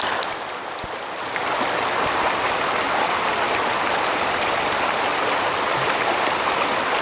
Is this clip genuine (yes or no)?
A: yes